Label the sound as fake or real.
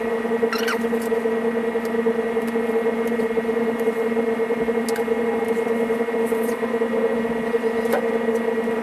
real